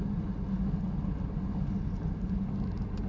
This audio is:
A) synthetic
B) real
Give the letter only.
B